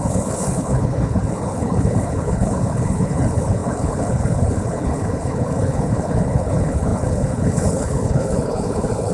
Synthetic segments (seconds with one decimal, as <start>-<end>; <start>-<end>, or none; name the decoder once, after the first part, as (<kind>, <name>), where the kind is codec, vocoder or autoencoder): 0.0-9.1 (codec, HILCodec)